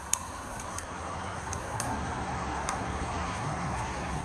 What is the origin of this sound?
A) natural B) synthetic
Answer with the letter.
B